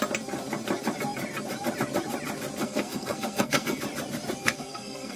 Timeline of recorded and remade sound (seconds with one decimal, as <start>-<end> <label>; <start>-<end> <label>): 0.0-2.6 recorded; 2.6-3.8 remade; 3.8-4.4 recorded; 4.4-5.2 remade